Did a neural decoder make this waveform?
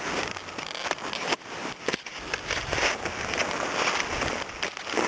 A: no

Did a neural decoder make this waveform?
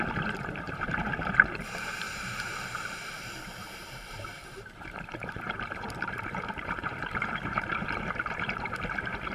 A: yes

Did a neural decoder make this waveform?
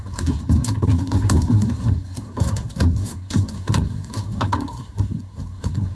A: yes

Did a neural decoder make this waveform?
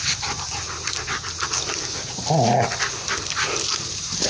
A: no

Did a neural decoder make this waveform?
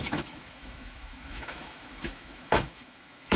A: yes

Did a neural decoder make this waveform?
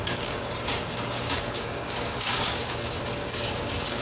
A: yes